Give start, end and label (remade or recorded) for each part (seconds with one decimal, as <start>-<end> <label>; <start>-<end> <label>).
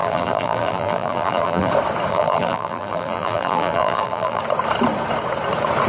0.0-1.7 remade; 1.7-2.1 recorded; 2.1-4.4 remade; 4.4-5.9 recorded